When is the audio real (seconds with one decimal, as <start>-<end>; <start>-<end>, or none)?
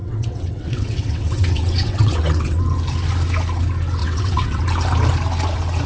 2.6-4.0; 4.6-5.9